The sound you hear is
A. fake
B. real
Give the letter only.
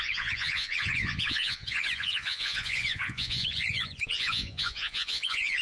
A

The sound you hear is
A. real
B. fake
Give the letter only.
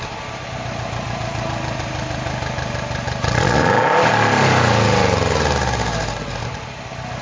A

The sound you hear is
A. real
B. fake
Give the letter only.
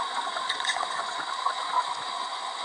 B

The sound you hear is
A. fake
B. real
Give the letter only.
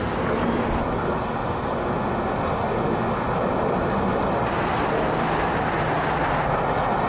B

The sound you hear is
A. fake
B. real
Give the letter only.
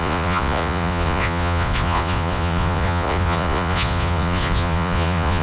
A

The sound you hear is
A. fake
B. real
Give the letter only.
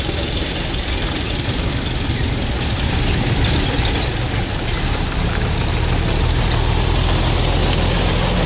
B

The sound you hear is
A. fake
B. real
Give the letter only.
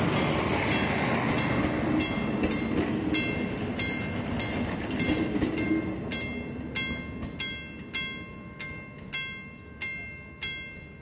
B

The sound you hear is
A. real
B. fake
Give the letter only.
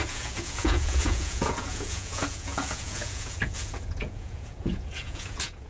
B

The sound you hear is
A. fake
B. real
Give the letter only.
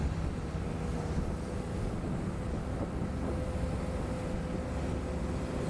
B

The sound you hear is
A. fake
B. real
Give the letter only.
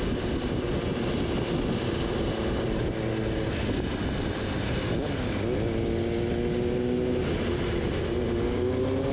B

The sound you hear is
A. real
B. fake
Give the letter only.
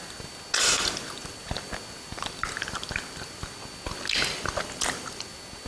A